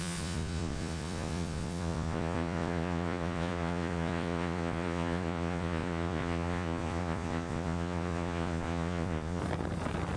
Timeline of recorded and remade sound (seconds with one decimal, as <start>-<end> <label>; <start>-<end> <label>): 0.0-9.4 remade; 9.4-10.2 recorded